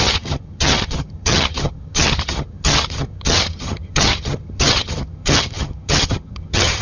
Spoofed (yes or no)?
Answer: yes